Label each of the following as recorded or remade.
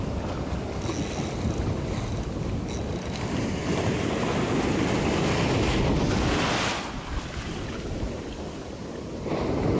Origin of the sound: recorded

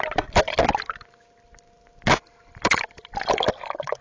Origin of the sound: recorded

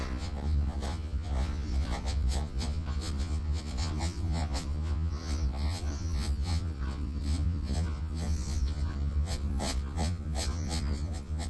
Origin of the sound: remade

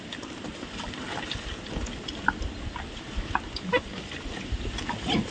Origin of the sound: recorded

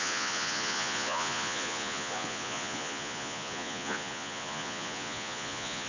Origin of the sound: remade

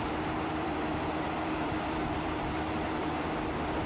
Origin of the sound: remade